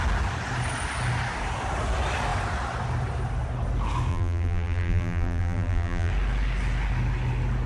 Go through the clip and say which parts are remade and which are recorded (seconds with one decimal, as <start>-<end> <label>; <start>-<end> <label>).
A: 0.0-4.1 recorded; 4.1-6.1 remade; 6.1-7.7 recorded